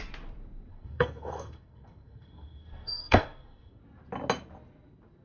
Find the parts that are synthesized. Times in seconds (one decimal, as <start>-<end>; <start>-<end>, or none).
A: 0.7-3.8